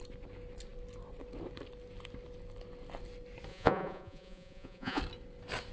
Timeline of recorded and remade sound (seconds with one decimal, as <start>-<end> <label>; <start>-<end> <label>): 0.0-3.5 recorded; 3.5-5.0 remade; 5.0-5.7 recorded